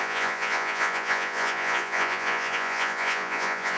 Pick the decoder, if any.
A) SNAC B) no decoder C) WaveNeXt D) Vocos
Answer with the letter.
D